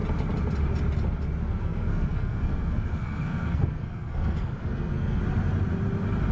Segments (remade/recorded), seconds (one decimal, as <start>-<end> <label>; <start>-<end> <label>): 0.0-1.4 recorded; 1.4-5.2 remade; 5.2-6.3 recorded